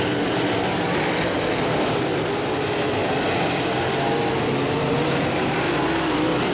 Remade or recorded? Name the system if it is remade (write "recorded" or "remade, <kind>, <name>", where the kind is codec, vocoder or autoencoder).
remade, vocoder, BigVGAN v2